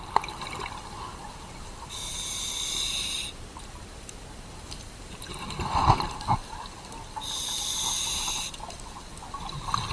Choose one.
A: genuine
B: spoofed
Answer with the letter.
A